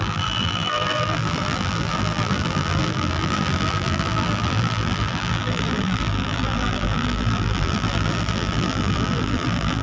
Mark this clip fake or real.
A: fake